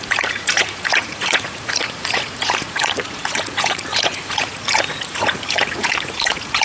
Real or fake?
fake